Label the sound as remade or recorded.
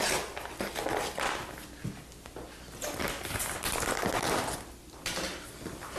recorded